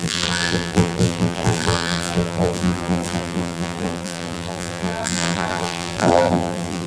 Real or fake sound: fake